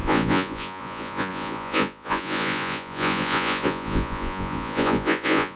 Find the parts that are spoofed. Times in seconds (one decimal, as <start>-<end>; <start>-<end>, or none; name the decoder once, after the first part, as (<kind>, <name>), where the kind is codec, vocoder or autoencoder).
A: 0.0-5.6 (vocoder, Vocos)